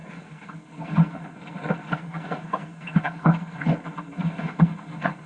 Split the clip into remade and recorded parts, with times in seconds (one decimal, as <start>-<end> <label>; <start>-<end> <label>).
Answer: 0.0-5.3 remade